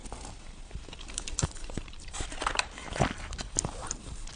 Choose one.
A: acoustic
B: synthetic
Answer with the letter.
A